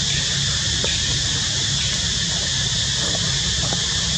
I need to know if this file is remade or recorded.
recorded